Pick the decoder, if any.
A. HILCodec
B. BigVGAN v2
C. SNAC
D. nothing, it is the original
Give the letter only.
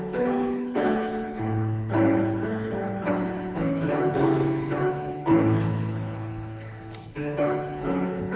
A